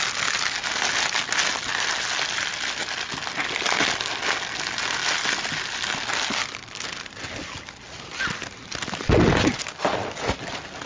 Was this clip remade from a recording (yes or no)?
no